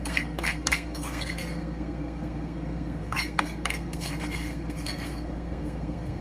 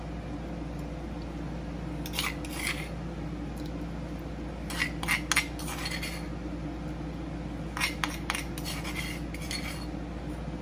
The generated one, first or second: first